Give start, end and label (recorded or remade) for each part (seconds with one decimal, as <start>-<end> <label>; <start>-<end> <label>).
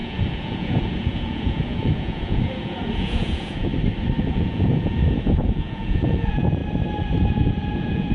0.0-3.7 remade; 3.7-4.2 recorded; 4.2-6.6 remade; 6.6-7.3 recorded; 7.3-8.1 remade